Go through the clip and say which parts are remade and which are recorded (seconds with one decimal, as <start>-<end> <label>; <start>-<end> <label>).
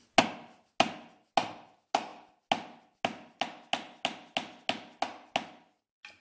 0.0-6.2 recorded